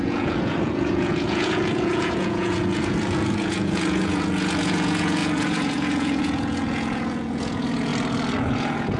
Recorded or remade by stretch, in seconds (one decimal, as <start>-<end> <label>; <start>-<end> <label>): 0.0-7.9 remade; 7.9-8.4 recorded; 8.4-9.0 remade